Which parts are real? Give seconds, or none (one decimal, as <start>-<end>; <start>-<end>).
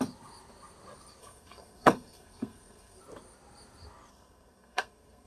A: 0.0-1.2; 3.0-4.1